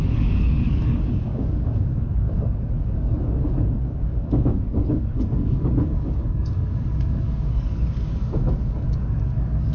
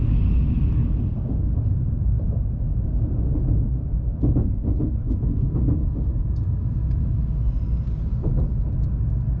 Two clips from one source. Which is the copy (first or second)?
first